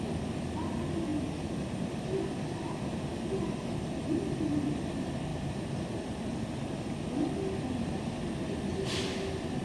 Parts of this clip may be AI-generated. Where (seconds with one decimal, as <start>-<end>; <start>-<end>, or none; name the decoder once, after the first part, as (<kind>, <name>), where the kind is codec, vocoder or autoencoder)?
5.3-6.3 (vocoder, BigVGAN v2)